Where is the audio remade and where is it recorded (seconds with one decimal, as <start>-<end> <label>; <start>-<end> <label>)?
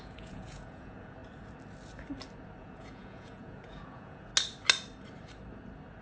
0.0-1.2 remade; 1.2-2.6 recorded; 2.6-4.3 remade; 4.3-6.0 recorded